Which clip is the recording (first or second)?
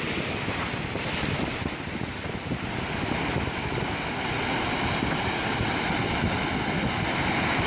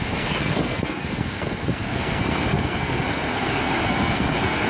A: first